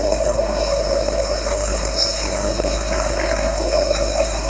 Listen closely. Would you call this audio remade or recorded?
remade